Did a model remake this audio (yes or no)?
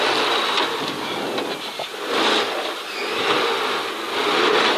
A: no